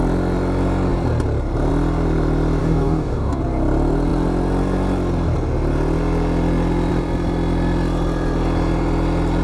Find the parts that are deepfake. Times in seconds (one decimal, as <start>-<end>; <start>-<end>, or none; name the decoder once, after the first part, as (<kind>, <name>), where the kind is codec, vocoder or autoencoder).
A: 2.6-3.4 (codec, DAC)